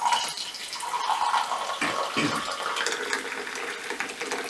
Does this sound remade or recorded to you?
recorded